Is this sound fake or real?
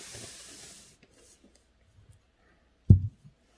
real